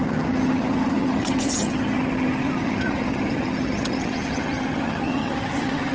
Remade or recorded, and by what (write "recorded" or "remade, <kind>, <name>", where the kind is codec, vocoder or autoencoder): remade, vocoder, HiFi-GAN